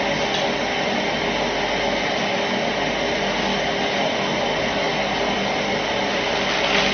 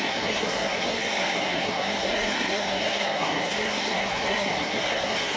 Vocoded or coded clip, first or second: second